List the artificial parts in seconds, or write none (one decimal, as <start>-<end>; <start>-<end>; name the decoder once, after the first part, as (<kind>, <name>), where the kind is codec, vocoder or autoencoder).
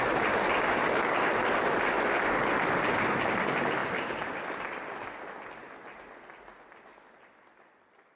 3.8-5.1 (vocoder, BigVGAN v2)